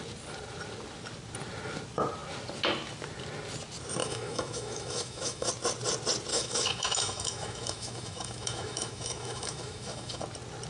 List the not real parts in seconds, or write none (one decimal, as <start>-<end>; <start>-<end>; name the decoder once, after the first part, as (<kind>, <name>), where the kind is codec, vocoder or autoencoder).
4.0-5.5 (autoencoder, DAC-VAE); 6.3-10.2